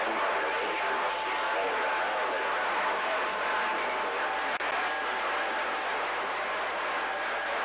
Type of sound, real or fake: real